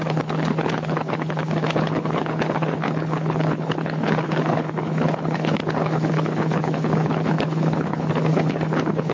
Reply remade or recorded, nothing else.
remade